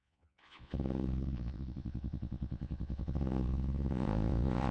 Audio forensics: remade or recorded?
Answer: remade